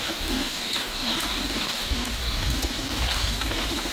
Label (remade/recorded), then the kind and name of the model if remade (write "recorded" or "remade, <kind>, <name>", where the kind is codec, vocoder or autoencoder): remade, codec, DAC